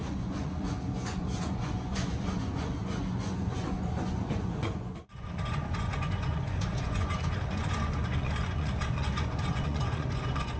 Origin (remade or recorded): remade